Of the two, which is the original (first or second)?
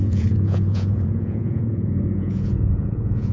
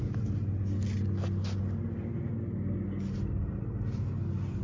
second